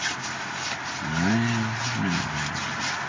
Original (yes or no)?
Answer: yes